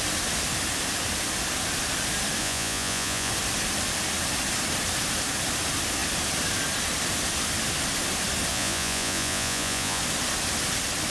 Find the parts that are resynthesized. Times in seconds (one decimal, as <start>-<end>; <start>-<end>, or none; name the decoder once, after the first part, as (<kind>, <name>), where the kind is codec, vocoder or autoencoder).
2.4-3.3 (vocoder, Vocos); 8.5-10.0